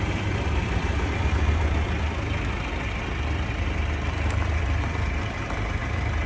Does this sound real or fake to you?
fake